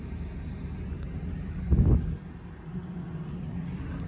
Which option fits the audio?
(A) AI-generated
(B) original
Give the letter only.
B